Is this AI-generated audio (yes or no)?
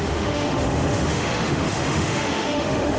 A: yes